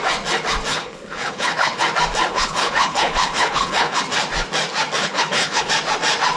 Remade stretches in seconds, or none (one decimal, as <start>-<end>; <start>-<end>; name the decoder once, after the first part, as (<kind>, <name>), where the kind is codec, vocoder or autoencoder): 0.7-1.8 (codec, HILCodec); 2.3-4.0; 5.0-5.7